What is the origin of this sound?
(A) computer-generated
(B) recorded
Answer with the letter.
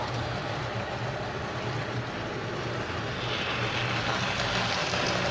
B